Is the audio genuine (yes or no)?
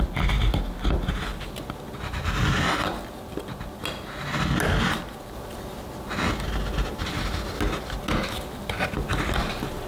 yes